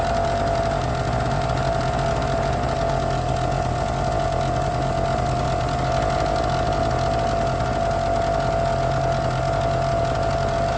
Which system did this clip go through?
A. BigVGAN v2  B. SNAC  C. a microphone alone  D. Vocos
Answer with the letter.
C